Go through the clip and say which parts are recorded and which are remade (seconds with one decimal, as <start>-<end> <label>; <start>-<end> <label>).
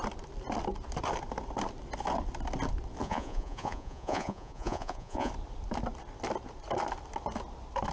0.0-3.0 recorded; 3.0-5.3 remade; 5.3-7.9 recorded